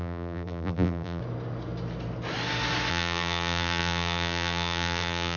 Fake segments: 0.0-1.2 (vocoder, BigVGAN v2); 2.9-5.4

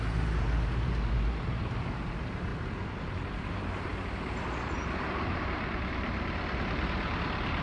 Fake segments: 0.0-2.5 (vocoder, BigVGAN v2); 3.3-3.9; 5.1-7.6

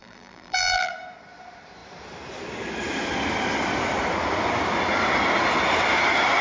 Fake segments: 0.0-0.9 (vocoder, BigVGAN v2)

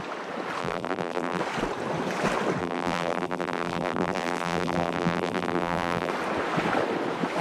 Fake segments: 0.6-1.4 (vocoder, BigVGAN v2); 2.6-6.1